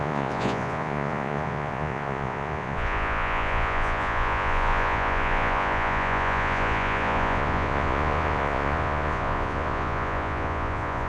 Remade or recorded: remade